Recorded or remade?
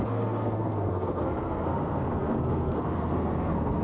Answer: remade